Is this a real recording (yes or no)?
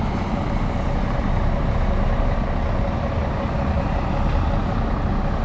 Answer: yes